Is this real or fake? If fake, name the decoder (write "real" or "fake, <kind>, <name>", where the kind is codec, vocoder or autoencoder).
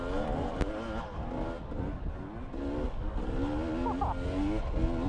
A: real